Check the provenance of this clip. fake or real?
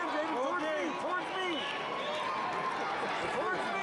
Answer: real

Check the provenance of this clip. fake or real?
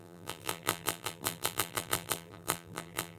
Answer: fake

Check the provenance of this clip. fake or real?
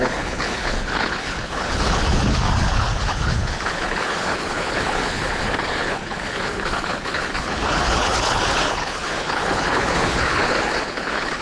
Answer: fake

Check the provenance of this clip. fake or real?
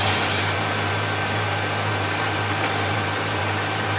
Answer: fake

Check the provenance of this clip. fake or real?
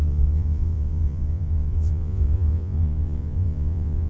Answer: fake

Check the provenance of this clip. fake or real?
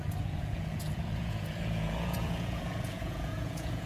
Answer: fake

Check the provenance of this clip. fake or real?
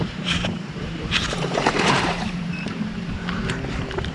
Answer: fake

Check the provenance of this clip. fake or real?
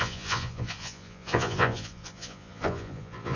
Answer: fake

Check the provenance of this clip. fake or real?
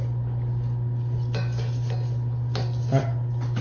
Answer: real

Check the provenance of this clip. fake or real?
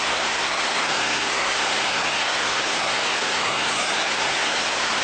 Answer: fake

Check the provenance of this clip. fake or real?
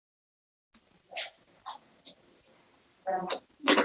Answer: real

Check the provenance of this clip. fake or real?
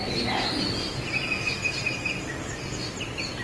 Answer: real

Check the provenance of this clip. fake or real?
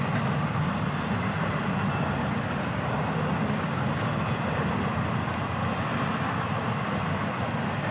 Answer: real